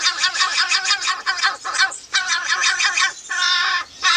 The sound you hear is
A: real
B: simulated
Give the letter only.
A